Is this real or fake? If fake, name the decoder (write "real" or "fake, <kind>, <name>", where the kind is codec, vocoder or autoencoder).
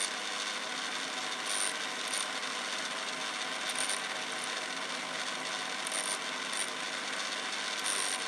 real